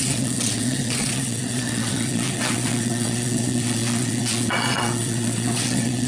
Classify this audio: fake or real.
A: fake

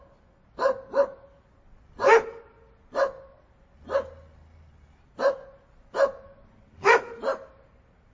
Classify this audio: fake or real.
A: real